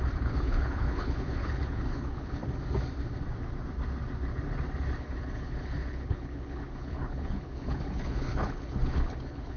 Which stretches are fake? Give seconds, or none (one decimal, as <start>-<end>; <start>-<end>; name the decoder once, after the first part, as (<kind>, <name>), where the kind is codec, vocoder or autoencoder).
0.0-2.4 (codec, HILCodec); 5.0-9.6